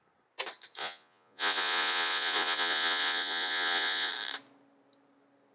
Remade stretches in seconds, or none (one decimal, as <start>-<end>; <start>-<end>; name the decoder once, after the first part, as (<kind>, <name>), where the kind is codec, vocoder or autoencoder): 0.8-4.1 (vocoder, Vocos)